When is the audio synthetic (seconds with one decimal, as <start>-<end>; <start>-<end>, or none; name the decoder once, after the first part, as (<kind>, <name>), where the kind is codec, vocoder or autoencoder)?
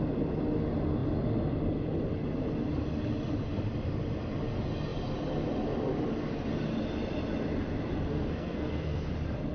8.1-9.1 (codec, SNAC)